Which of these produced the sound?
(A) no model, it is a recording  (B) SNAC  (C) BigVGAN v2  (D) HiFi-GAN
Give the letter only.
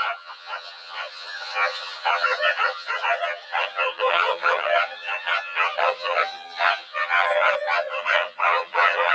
D